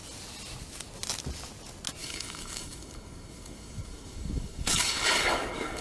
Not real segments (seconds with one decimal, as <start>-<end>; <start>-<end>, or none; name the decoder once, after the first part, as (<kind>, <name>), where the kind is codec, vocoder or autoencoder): 2.0-5.8 (codec, DAC)